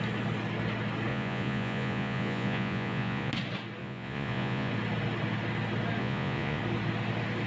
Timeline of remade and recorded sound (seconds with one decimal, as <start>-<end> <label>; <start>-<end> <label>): 0.0-1.1 recorded; 1.1-3.3 remade; 3.3-3.8 recorded; 3.8-4.7 remade; 4.7-6.0 recorded; 6.0-6.6 remade; 6.6-7.5 recorded